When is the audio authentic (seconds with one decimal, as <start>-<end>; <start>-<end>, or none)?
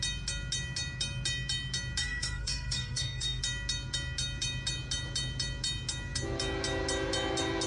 0.0-2.0; 3.4-7.7